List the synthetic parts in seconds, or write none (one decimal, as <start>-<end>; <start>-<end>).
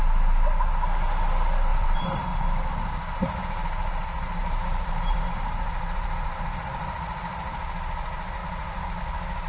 1.7-2.2; 4.4-6.6; 8.4-9.0